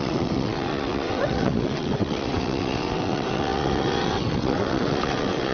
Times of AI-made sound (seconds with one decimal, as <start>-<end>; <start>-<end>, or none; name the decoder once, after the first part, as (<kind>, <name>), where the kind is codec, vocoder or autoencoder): 0.0-5.5 (vocoder, WaveNeXt)